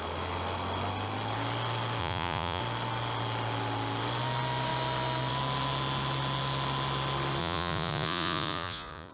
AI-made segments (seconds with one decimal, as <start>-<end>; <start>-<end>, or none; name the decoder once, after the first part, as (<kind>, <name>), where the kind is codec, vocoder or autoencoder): 2.0-2.6 (vocoder, Vocos); 7.4-9.1